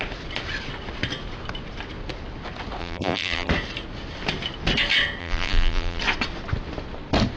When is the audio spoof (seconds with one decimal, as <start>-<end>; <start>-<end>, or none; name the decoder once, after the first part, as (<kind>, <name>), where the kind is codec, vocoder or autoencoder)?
2.8-3.5 (vocoder, BigVGAN v2); 5.2-6.0